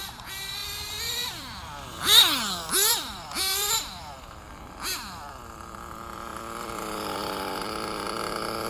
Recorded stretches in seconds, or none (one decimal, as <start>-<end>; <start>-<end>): 2.2-2.9